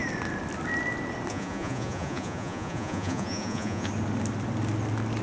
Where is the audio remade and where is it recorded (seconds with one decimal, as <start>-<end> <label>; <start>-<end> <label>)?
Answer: 0.0-1.3 recorded; 1.3-3.9 remade; 3.9-5.2 recorded